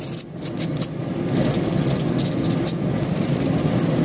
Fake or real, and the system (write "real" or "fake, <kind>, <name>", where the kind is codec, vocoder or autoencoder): real